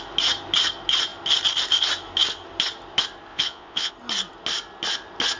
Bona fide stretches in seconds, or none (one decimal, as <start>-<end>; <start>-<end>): 0.0-3.3; 3.9-5.4

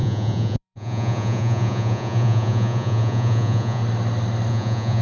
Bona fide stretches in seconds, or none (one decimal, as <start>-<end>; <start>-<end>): 3.8-4.5

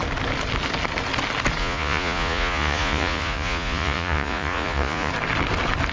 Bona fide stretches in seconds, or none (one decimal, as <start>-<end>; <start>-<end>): 0.0-1.6; 5.1-5.9

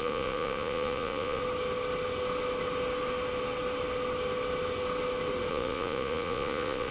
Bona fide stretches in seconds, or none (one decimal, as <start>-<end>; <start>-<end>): 1.4-5.5

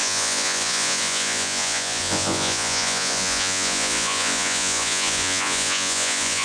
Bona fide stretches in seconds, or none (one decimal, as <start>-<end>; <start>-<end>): none

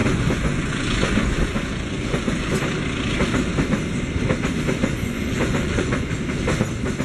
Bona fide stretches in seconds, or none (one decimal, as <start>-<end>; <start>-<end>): 2.6-4.8; 6.1-7.0

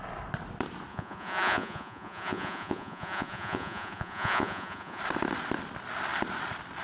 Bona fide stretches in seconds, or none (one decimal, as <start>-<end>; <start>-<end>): 0.0-0.9; 5.0-6.8

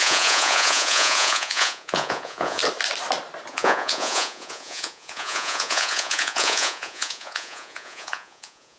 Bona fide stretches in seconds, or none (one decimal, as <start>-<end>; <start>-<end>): 2.6-3.5